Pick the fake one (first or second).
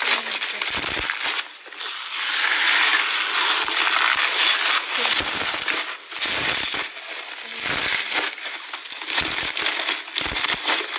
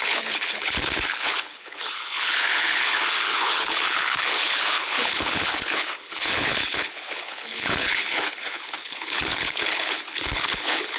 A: second